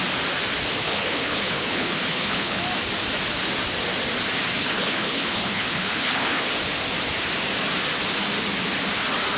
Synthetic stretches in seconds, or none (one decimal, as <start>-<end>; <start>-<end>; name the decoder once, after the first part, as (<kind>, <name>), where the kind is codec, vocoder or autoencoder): 0.8-2.6 (codec, HILCodec); 4.6-6.5